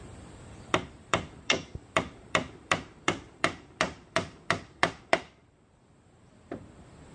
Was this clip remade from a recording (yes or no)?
yes